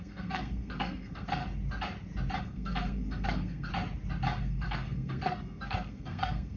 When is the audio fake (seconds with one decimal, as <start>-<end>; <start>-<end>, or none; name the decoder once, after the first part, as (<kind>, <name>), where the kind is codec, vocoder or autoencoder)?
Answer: 0.0-1.4 (codec, SNAC); 2.4-3.7; 4.4-6.6